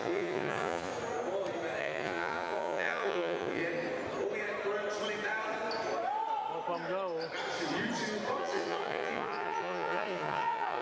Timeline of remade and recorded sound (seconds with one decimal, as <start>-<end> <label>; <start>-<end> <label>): 0.0-0.9 remade; 0.9-1.8 recorded; 1.8-3.6 remade; 3.6-8.4 recorded; 8.4-10.8 remade